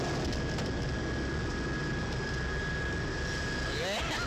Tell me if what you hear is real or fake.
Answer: real